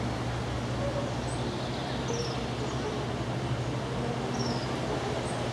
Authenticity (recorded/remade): recorded